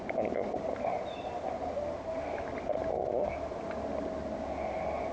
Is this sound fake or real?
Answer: real